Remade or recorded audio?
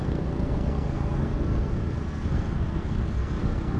remade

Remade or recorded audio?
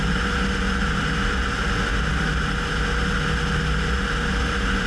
recorded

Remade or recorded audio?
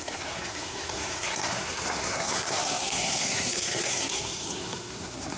remade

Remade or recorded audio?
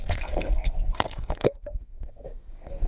remade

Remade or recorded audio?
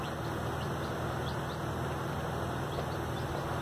recorded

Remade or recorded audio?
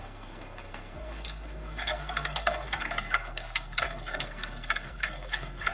remade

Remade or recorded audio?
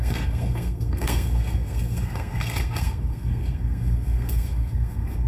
remade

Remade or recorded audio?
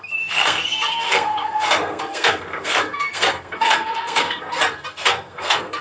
remade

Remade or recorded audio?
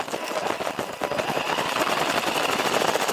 recorded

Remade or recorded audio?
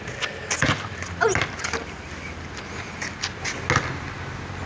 recorded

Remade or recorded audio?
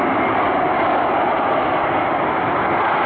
recorded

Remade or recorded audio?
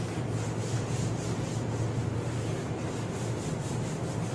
recorded